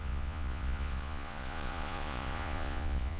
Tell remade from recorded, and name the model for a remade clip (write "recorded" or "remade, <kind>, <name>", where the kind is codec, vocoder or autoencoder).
remade, vocoder, Vocos